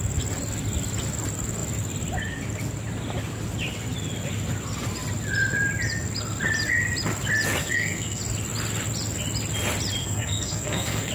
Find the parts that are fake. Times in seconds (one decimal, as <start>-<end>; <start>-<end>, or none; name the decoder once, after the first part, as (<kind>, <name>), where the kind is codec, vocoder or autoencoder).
7.6-8.2 (codec, SNAC); 10.0-11.1